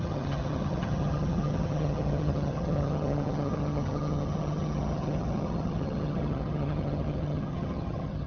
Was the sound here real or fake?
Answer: fake